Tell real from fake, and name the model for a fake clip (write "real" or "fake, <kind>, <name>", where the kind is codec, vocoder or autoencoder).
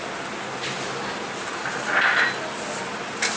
real